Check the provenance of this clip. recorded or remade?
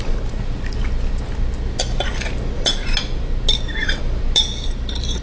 recorded